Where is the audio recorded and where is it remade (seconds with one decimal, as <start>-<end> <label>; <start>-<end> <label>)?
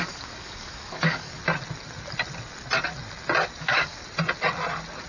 0.0-1.4 remade; 1.4-3.6 recorded; 3.6-4.0 remade; 4.0-5.1 recorded